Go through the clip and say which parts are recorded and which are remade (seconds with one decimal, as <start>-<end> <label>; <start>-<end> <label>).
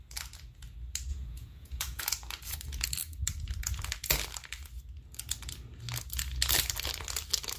0.0-1.1 recorded; 1.1-2.0 remade; 2.0-7.6 recorded